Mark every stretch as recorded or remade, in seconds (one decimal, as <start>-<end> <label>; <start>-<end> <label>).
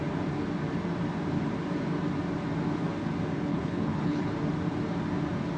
0.0-3.5 recorded; 3.5-4.3 remade; 4.3-5.6 recorded